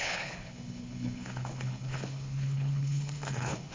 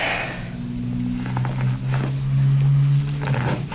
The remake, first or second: first